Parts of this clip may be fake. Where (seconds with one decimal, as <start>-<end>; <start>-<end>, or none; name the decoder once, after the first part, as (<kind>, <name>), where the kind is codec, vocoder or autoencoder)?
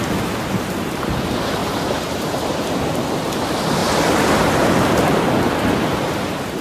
1.6-2.6 (vocoder, BigVGAN v2)